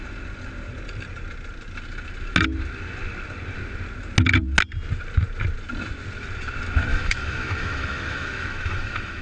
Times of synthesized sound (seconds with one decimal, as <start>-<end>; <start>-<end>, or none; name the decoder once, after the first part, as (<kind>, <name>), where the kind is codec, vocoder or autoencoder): 6.9-9.2 (autoencoder, DAC-VAE)